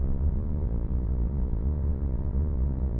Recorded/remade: remade